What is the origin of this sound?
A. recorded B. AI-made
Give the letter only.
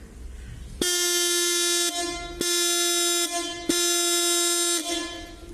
A